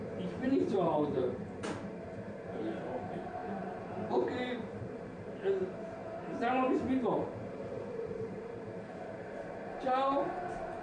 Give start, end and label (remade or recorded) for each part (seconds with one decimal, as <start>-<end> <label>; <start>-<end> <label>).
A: 0.0-6.0 remade; 6.0-7.0 recorded; 7.0-10.8 remade